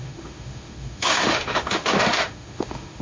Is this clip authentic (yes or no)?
no